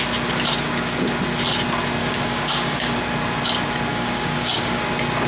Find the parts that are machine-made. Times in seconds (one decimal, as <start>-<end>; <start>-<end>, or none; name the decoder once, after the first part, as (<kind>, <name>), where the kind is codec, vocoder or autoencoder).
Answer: 2.0-3.0 (codec, DAC); 3.9-4.8